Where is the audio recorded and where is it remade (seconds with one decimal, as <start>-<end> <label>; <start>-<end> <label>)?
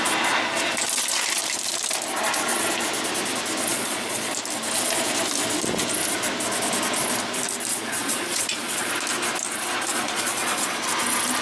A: 0.0-3.7 recorded; 3.7-4.3 remade; 4.3-7.7 recorded; 7.7-8.9 remade; 8.9-9.9 recorded; 9.9-10.8 remade; 10.8-11.4 recorded